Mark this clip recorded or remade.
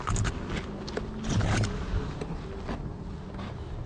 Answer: recorded